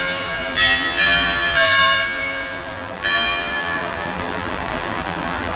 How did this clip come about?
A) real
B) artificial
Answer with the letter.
B